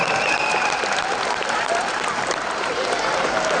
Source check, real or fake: fake